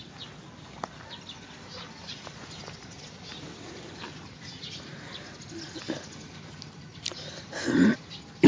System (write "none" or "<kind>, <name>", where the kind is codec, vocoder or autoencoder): none